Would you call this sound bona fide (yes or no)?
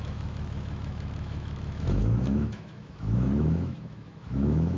no